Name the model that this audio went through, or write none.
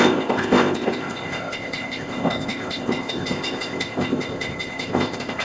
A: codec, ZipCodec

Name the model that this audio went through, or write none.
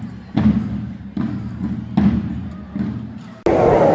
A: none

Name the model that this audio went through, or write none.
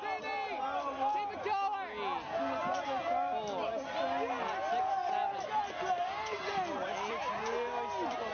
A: none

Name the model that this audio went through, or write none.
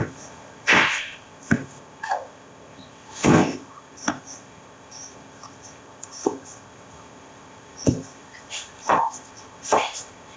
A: codec, ZipCodec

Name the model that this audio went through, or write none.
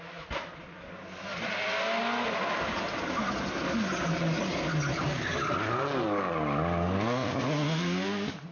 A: none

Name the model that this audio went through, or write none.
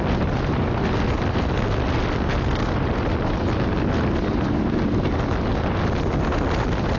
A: none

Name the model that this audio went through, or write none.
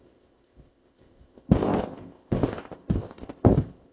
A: codec, ZipCodec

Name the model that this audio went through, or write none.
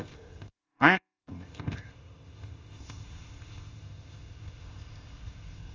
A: codec, ZipCodec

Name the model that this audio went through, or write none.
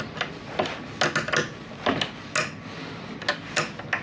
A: none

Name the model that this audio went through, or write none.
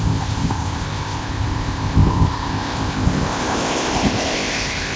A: codec, ZipCodec